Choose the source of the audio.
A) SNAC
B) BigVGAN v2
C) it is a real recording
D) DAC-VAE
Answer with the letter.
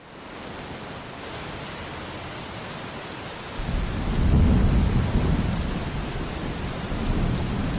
C